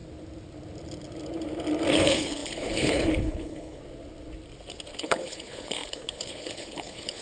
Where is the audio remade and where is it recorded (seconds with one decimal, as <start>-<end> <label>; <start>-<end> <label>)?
0.0-1.9 recorded; 1.9-3.8 remade; 3.8-5.0 recorded; 5.0-7.2 remade